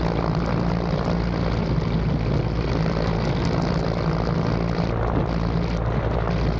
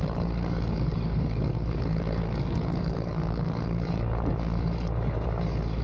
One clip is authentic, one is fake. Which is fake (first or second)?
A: second